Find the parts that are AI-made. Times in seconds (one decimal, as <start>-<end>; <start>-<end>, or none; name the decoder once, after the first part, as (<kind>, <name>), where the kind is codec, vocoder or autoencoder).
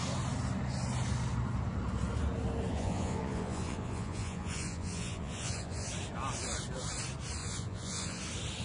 2.7-5.9 (vocoder, Vocos); 7.4-8.2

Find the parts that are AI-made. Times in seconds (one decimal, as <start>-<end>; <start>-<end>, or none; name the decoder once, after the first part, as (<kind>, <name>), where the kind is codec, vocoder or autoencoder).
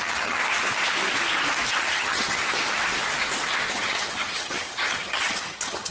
0.0-0.4 (vocoder, HiFi-GAN); 1.8-2.4; 3.7-5.9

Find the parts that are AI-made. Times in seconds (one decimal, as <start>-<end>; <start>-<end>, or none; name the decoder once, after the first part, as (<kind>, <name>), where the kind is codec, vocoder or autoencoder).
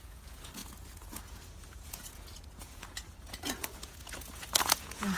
0.0-5.2 (vocoder, Vocos)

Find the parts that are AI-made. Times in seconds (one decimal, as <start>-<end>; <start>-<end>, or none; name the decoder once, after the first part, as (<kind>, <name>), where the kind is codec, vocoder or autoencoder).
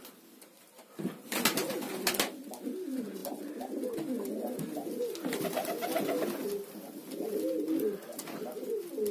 none